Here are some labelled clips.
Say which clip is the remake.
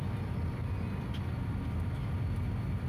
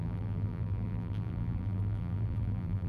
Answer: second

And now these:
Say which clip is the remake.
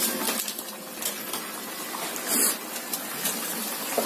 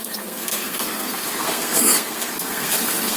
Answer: second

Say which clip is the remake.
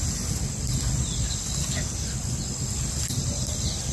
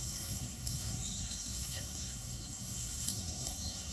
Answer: second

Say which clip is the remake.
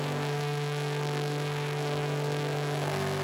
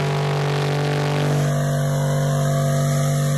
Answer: first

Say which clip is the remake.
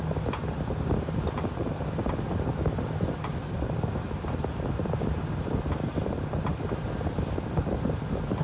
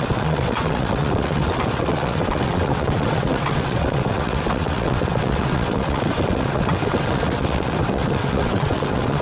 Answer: second